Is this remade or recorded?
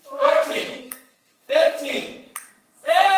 remade